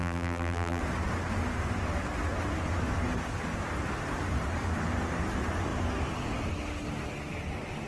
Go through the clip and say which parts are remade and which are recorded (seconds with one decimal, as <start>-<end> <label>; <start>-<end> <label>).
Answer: 0.0-0.8 remade; 0.8-7.9 recorded